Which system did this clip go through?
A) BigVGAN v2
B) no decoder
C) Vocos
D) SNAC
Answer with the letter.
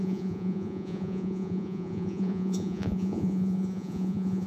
C